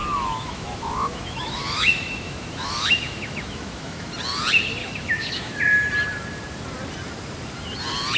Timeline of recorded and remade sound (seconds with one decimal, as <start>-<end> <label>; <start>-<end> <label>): 0.0-4.1 remade; 4.1-4.8 recorded; 4.8-5.6 remade; 5.6-8.2 recorded